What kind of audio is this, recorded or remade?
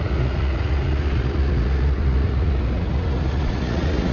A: remade